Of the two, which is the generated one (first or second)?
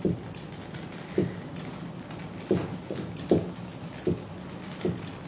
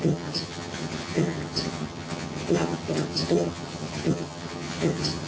second